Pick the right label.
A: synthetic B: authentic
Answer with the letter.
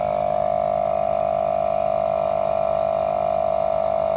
B